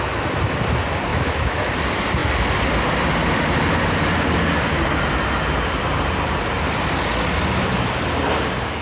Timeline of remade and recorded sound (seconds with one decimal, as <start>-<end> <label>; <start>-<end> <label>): 0.0-1.1 recorded; 1.1-1.7 remade; 1.7-8.8 recorded